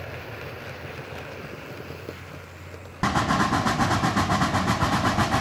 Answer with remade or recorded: recorded